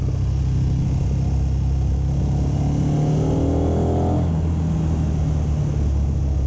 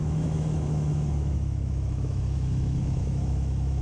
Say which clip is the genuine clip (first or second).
first